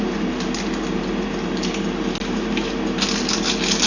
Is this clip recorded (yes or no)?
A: yes